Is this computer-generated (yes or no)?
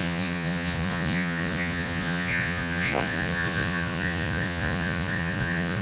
yes